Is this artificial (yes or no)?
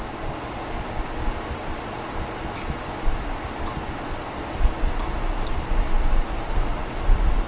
no